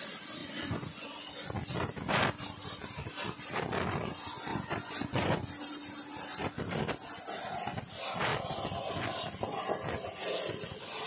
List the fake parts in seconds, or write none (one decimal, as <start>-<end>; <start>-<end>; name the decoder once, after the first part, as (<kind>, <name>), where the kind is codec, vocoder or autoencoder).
0.4-1.3 (vocoder, Vocos); 4.5-5.5